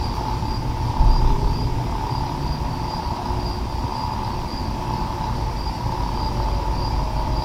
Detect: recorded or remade recorded